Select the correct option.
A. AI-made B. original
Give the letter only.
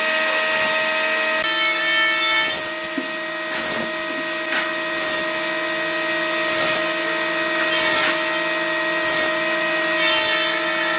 B